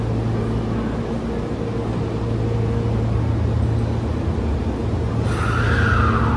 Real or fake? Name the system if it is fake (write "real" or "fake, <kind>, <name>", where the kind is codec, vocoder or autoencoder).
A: real